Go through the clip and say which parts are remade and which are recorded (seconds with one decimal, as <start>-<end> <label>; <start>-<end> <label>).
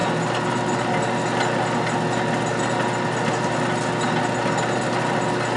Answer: 0.0-5.6 recorded